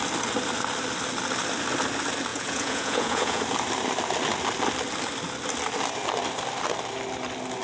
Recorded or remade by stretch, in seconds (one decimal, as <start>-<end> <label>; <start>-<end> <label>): 0.0-2.3 recorded; 2.3-3.4 remade; 3.4-7.6 recorded